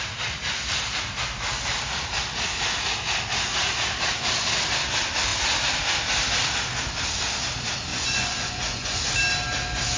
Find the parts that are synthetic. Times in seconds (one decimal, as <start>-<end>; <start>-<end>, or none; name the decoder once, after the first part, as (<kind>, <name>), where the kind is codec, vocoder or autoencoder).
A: 7.9-9.0 (vocoder, Vocos)

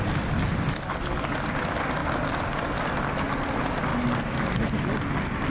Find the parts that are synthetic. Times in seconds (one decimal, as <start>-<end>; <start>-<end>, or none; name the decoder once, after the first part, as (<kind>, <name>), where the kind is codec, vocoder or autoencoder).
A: none